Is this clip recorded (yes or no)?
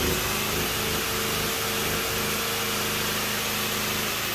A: yes